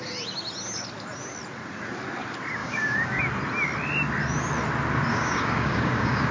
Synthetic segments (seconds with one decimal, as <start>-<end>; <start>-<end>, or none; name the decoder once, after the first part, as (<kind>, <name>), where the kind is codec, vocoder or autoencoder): 2.6-3.2 (codec, DAC); 5.1-6.3